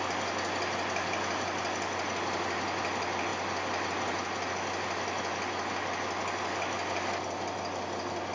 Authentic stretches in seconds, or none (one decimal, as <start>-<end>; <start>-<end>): 0.0-8.3